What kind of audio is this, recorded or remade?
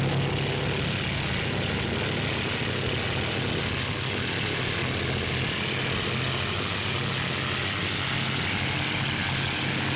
recorded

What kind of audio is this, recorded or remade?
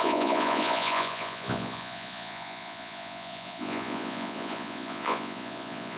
remade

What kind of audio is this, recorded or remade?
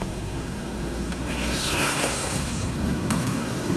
remade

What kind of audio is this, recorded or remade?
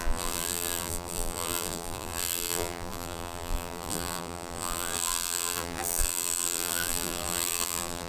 remade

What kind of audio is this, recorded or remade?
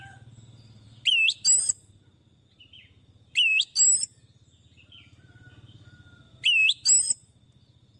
recorded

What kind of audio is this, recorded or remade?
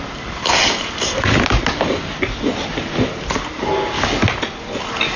recorded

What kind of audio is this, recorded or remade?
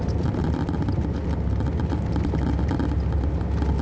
recorded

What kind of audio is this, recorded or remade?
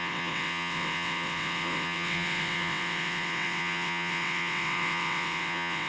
remade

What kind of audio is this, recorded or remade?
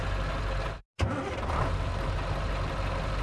recorded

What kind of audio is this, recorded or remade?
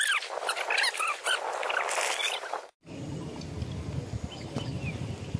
recorded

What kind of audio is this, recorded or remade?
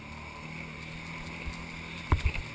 recorded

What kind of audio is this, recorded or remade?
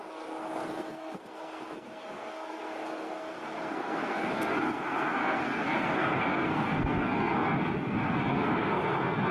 remade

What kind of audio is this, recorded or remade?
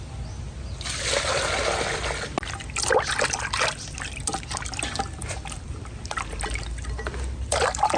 recorded